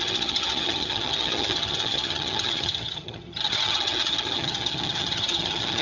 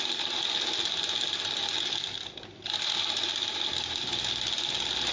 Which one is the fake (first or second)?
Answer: first